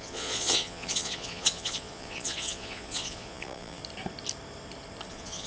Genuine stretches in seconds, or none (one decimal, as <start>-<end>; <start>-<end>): 3.8-5.1